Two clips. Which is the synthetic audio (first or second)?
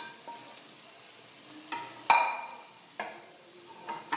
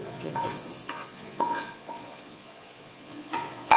second